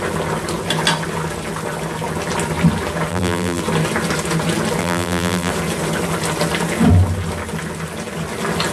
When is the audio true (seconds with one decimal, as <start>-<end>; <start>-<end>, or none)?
0.0-3.1; 3.6-4.8; 5.5-8.7